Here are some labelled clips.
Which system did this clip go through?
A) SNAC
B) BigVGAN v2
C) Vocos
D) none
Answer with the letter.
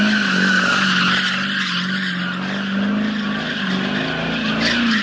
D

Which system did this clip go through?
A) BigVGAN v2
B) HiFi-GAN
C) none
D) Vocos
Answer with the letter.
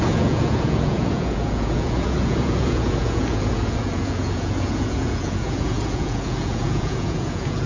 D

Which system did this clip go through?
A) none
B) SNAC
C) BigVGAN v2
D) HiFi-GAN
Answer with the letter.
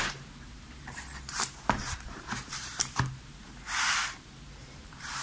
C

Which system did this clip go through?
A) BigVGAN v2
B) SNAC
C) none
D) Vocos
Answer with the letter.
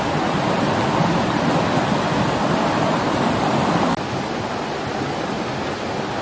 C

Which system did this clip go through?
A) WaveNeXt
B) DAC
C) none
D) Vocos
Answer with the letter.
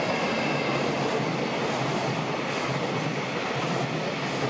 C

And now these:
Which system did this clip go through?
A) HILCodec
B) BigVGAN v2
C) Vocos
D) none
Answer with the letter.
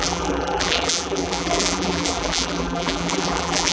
B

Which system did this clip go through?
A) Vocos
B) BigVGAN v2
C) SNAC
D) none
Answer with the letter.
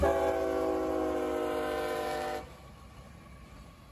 D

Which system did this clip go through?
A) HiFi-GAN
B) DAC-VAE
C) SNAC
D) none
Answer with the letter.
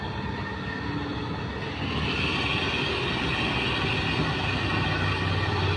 D